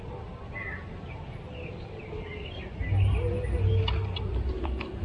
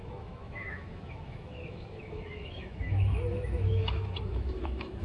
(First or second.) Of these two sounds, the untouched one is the first